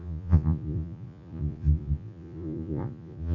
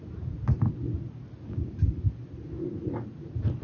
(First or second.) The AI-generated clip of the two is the first